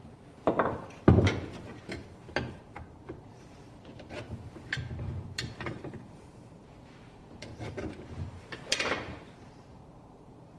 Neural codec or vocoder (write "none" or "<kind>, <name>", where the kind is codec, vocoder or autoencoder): vocoder, BigVGAN v2